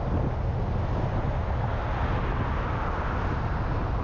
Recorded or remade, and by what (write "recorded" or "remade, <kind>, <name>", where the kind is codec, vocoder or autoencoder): recorded